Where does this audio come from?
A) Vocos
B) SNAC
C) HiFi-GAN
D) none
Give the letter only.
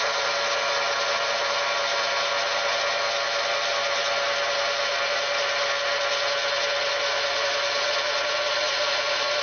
D